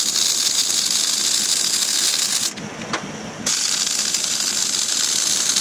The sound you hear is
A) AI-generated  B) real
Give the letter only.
B